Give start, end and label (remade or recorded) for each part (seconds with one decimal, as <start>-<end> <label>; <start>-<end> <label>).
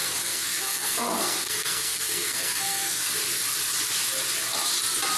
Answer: 0.0-3.1 remade; 3.1-5.2 recorded